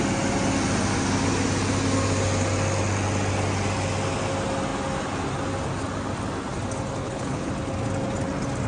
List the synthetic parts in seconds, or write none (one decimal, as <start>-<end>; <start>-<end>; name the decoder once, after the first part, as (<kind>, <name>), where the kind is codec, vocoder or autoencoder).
7.0-7.5 (codec, HILCodec)